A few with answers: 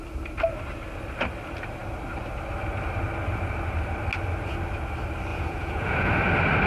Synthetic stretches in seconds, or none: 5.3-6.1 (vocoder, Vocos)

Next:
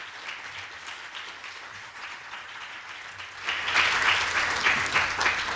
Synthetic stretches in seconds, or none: 1.7-2.8 (vocoder, Vocos)

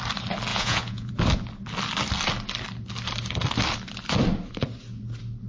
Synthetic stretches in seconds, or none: 0.5-1.1 (vocoder, Vocos)

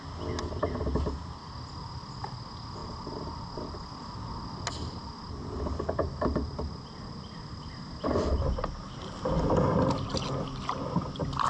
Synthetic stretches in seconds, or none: none